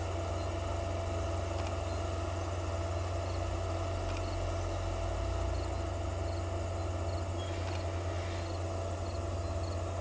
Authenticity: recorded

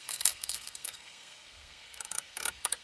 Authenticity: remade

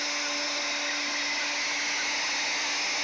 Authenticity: recorded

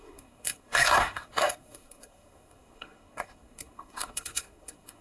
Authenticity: remade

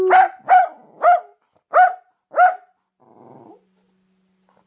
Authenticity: recorded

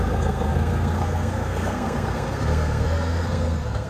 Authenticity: remade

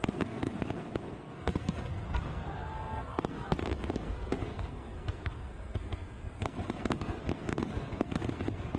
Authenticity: remade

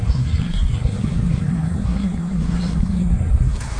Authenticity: remade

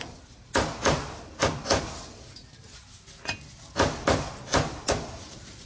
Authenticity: recorded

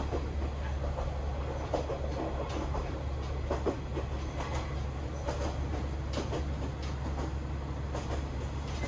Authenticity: recorded